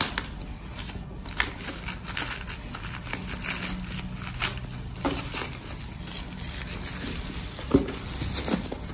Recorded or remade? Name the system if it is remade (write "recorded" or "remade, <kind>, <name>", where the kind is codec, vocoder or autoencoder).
recorded